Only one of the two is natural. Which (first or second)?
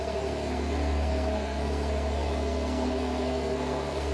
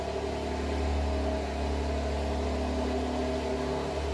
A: second